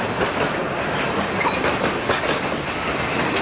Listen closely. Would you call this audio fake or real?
real